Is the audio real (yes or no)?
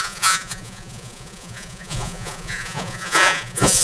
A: no